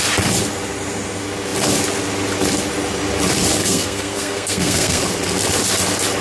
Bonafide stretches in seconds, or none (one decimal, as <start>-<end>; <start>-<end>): 0.0-3.6; 5.0-6.2